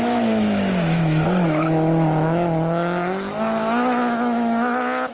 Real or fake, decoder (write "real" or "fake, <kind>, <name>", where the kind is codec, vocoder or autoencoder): fake, autoencoder, DAC-VAE